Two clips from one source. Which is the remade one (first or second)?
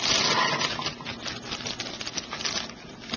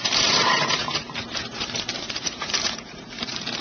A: second